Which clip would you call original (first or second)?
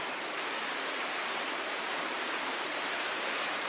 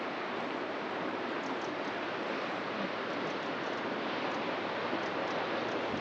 second